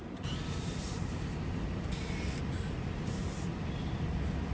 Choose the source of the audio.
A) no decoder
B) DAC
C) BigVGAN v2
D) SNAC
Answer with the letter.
A